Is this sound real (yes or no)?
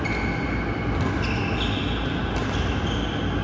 yes